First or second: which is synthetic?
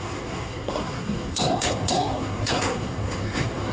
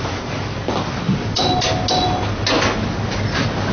first